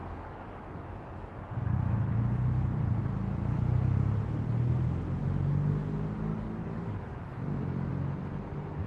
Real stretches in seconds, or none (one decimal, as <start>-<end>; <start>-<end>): 2.2-6.3; 7.9-8.9